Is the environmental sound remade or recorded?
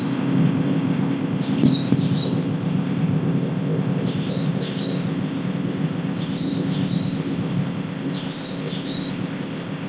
remade